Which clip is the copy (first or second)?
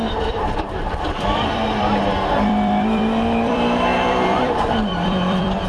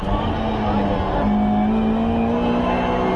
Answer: first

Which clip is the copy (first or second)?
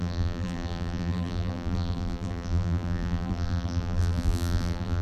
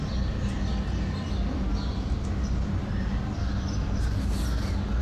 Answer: first